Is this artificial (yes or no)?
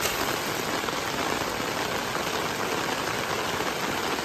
no